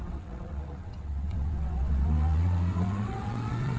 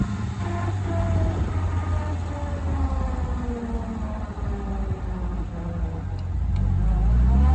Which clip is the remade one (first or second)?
first